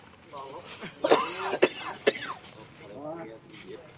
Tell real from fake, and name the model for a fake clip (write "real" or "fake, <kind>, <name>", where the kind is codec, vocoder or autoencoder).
real